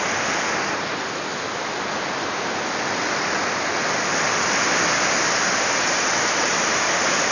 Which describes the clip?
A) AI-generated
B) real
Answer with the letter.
B